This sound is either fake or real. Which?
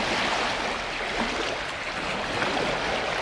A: real